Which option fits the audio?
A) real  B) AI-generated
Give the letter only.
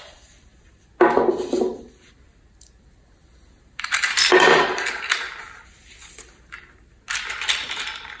A